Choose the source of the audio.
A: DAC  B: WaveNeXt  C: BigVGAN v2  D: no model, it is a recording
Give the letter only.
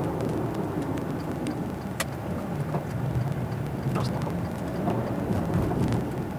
D